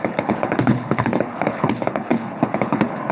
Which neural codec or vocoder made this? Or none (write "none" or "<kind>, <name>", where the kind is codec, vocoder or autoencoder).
codec, HILCodec